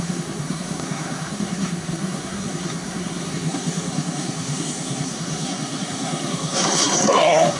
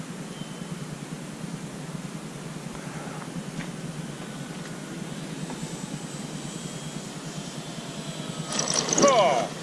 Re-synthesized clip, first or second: first